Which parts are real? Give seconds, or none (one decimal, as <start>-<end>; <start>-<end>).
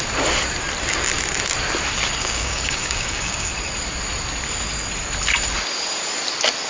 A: 0.0-2.2; 3.5-6.7